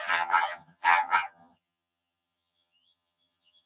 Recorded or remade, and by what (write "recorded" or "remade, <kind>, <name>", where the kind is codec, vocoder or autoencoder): remade, vocoder, HiFi-GAN